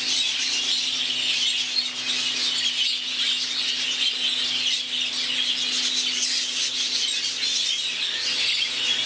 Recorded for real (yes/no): yes